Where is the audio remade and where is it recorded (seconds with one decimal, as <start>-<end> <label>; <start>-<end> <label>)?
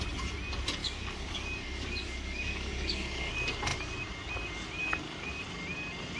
0.0-0.8 recorded; 0.8-3.3 remade; 3.3-4.8 recorded; 4.8-5.4 remade; 5.4-6.2 recorded